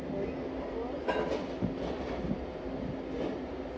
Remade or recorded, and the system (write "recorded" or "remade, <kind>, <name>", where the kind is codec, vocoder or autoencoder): recorded